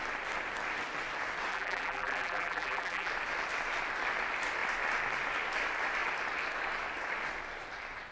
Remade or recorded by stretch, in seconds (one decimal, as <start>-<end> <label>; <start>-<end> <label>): 0.0-1.5 recorded; 1.5-3.1 remade; 3.1-8.1 recorded